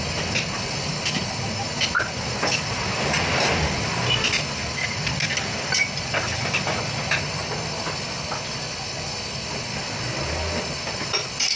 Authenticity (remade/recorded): recorded